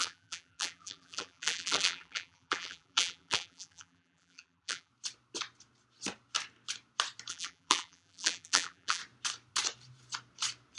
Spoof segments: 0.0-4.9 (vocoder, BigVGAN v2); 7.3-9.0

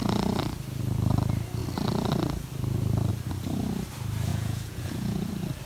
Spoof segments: 4.3-5.3 (vocoder, Vocos)

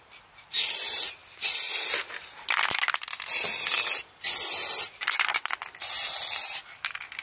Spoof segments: none

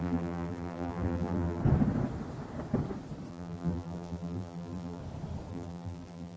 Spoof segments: 0.0-1.6 (vocoder, BigVGAN v2); 3.3-5.0; 5.5-6.4